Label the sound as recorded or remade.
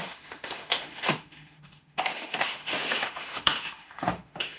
remade